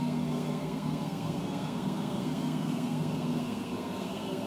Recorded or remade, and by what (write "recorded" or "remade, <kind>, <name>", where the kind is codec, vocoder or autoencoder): remade, codec, SNAC